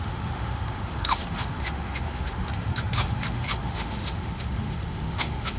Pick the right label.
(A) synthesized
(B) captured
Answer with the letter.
A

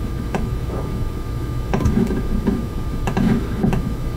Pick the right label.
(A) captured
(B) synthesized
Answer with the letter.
B